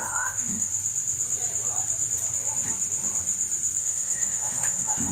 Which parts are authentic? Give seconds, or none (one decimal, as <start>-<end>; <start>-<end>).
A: 0.7-3.8